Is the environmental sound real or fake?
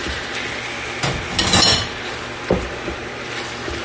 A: real